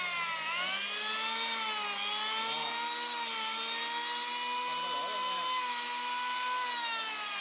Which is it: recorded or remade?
recorded